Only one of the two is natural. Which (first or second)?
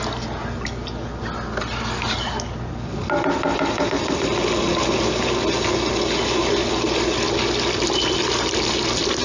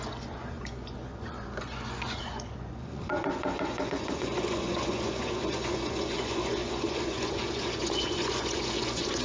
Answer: first